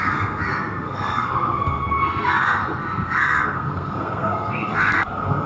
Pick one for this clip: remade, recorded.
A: remade